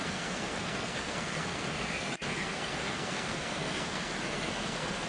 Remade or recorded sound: remade